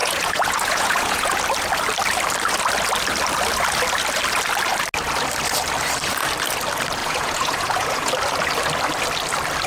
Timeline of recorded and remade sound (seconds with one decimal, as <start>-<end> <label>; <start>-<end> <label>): 0.0-1.4 remade; 1.4-7.0 recorded; 7.0-8.1 remade; 8.1-9.7 recorded